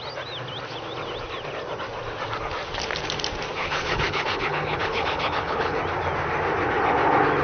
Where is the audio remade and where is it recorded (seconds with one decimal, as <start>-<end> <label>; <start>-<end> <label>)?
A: 0.0-3.6 recorded; 3.6-5.8 remade; 5.8-7.4 recorded